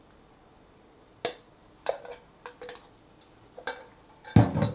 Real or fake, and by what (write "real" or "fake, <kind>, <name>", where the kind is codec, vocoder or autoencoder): real